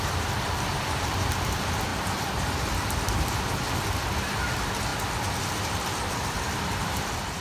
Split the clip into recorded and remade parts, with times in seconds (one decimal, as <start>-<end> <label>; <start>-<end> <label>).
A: 0.0-1.9 remade; 1.9-4.2 recorded; 4.2-4.9 remade; 4.9-5.4 recorded; 5.4-7.4 remade